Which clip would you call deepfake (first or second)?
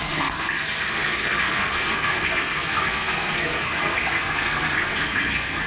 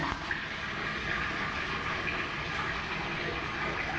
first